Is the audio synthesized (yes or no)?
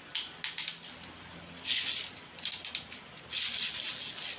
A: no